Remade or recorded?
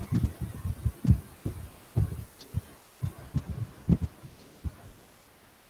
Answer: recorded